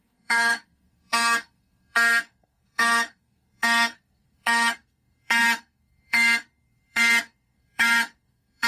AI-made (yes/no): yes